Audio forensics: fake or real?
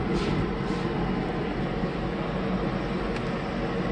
real